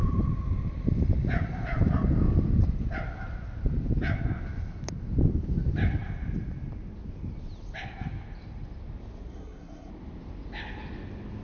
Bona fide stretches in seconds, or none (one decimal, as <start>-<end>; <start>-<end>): 0.0-9.3; 9.9-11.4